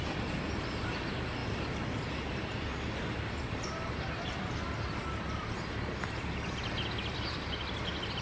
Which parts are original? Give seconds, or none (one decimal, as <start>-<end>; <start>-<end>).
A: 0.0-8.2